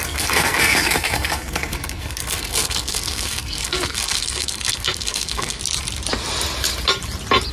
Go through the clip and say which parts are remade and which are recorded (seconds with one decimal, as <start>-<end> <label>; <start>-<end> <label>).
0.0-5.6 remade; 5.6-7.5 recorded